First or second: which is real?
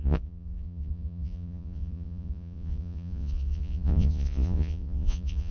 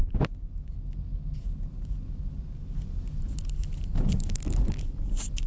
second